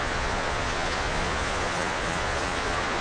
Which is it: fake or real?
fake